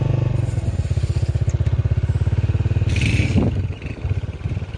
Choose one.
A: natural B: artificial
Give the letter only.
A